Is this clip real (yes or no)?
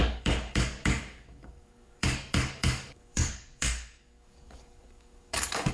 no